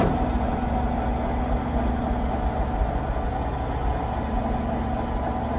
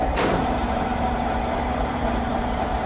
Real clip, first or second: first